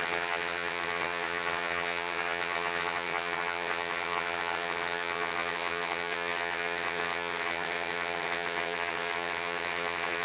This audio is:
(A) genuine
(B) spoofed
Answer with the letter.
B